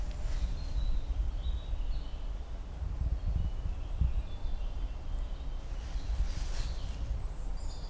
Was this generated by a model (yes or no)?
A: no